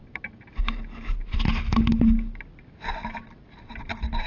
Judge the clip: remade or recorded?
recorded